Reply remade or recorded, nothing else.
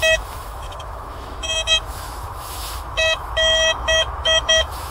remade